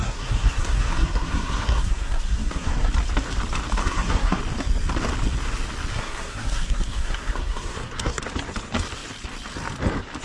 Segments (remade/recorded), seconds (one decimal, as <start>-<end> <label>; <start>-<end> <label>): 0.0-2.9 remade; 2.9-3.8 recorded; 3.8-4.4 remade; 4.4-5.9 recorded; 5.9-8.2 remade; 8.2-10.2 recorded